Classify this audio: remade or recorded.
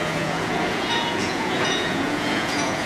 remade